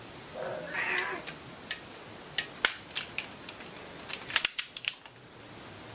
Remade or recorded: recorded